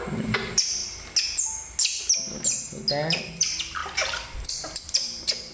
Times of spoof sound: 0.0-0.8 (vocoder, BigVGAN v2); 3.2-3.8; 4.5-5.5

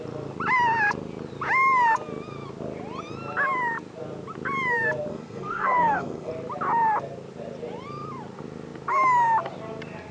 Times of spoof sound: 5.1-6.3 (codec, SNAC)

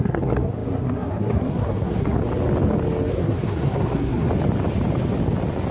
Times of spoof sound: 0.0-2.2 (codec, SNAC); 3.1-4.3

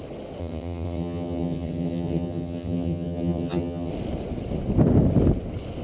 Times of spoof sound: 0.4-3.9 (vocoder, HiFi-GAN)

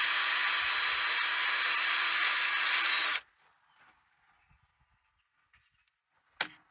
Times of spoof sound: none